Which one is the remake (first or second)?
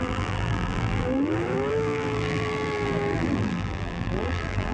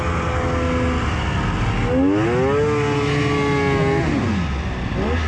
first